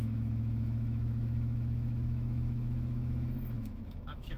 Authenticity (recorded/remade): remade